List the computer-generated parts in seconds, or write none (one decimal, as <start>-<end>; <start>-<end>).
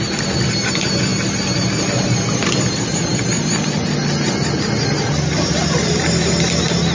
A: none